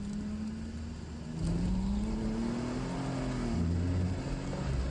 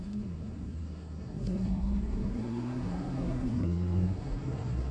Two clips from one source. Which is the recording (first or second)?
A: first